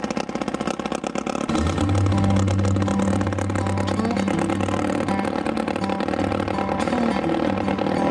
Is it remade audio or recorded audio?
recorded